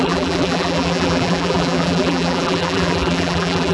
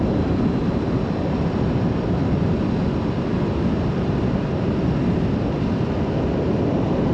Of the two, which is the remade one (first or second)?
first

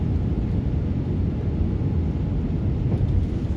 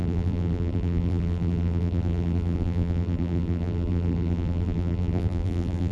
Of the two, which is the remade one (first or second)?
second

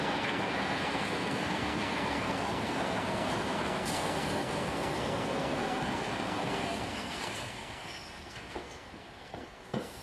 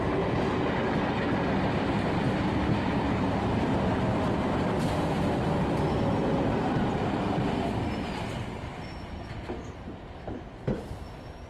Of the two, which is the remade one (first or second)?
first